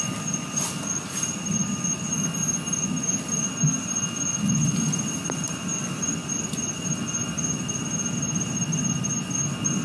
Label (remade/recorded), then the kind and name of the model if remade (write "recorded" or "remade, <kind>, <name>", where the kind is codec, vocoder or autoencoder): recorded